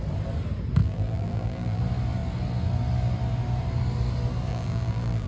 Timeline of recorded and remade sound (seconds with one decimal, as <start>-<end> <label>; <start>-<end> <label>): 0.0-0.8 recorded; 0.8-1.8 remade; 1.8-4.5 recorded; 4.5-5.3 remade

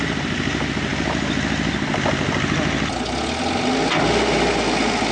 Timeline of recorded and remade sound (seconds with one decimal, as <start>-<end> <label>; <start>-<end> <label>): 0.0-5.1 recorded

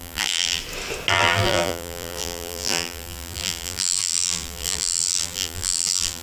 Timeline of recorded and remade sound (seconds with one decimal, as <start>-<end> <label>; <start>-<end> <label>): 0.0-0.6 remade; 0.6-1.1 recorded; 1.1-6.2 remade

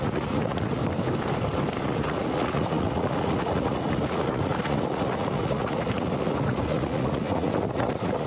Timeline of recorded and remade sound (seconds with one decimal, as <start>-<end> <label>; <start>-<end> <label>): 0.0-0.8 remade; 0.8-1.8 recorded; 1.8-8.3 remade

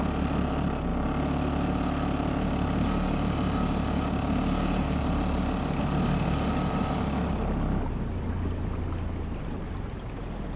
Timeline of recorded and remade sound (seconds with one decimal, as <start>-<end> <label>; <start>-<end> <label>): 0.0-0.9 remade; 0.9-5.8 recorded; 5.8-10.6 remade

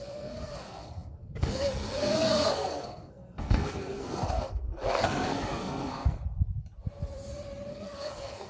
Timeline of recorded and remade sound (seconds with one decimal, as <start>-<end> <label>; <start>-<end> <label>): 0.0-6.2 remade; 6.2-7.7 recorded; 7.7-8.5 remade

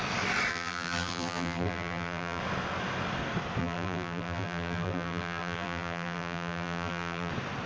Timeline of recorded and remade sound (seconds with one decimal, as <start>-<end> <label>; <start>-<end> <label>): 0.0-0.5 recorded; 0.5-2.4 remade; 2.4-3.6 recorded; 3.6-7.3 remade; 7.3-7.7 recorded

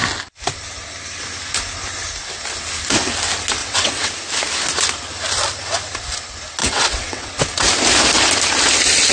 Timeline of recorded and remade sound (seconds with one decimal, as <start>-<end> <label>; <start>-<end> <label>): 0.0-3.6 recorded; 3.6-4.1 remade; 4.1-6.6 recorded; 6.6-7.3 remade; 7.3-9.1 recorded